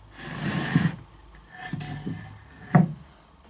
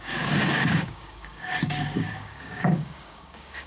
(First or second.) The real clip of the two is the first